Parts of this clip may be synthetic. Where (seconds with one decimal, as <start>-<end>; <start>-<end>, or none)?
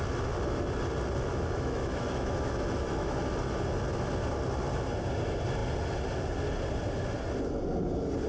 1.3-3.2